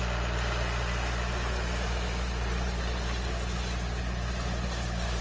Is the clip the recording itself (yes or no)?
yes